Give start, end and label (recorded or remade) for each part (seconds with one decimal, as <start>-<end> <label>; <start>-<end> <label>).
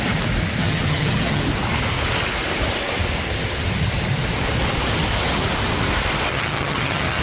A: 0.0-0.6 recorded; 0.6-1.4 remade; 1.4-6.3 recorded; 6.3-7.2 remade